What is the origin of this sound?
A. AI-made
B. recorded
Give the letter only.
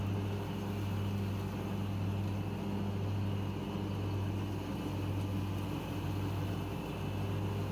B